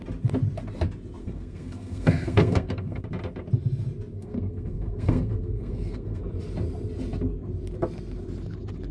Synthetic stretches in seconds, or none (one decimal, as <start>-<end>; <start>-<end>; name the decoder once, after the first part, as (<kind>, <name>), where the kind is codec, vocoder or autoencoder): 1.2-3.0 (codec, SNAC); 4.2-6.2